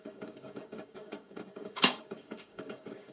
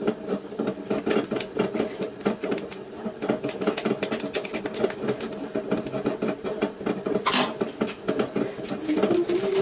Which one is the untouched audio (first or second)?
second